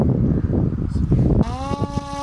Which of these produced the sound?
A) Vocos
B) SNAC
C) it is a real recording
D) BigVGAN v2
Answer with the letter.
C